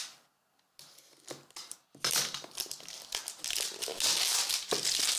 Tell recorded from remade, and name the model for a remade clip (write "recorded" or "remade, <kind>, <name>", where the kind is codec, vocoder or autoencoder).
recorded